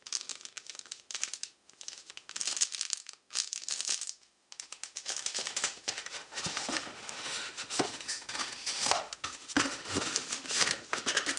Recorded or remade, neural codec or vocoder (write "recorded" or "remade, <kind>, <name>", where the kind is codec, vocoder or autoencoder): remade, autoencoder, DAC-VAE